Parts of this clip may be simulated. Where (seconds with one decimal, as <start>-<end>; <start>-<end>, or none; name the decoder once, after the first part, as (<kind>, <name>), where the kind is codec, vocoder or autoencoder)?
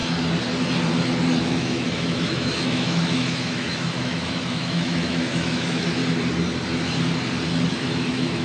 1.4-6.0 (autoencoder, DAC-VAE); 7.7-8.4